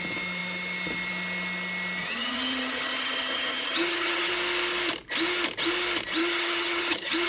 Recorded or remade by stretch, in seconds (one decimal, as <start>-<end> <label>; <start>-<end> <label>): 0.0-2.0 recorded; 2.0-4.3 remade; 4.3-6.2 recorded; 6.2-7.3 remade